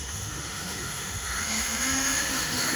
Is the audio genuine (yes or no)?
no